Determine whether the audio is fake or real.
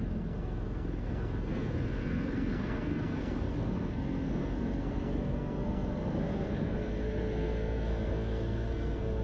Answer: fake